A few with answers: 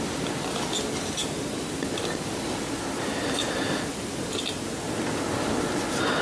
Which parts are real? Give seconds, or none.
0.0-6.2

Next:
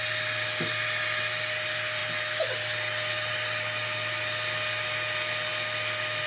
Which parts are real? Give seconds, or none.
0.0-6.3

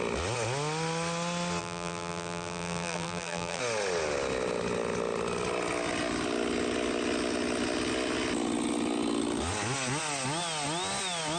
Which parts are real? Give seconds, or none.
0.0-1.6; 3.6-11.4

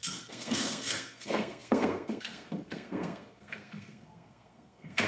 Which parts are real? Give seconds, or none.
none

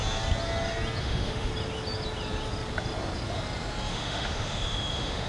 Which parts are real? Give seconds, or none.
0.0-1.0; 1.5-3.9

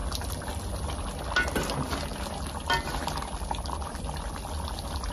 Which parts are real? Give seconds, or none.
0.0-5.1

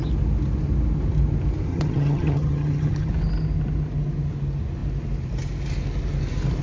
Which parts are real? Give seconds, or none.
0.0-1.7; 3.1-6.6

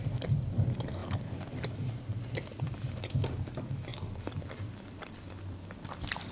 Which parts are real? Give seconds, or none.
1.0-1.6